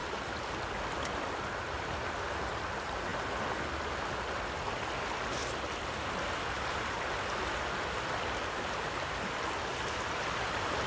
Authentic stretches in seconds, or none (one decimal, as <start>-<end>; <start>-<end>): 0.0-10.9